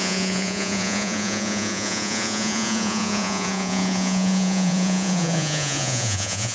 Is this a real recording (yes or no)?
no